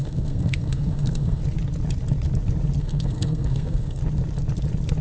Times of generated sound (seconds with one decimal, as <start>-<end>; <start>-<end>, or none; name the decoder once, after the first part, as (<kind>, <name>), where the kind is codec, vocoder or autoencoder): 0.0-1.4 (codec, SNAC); 2.8-4.0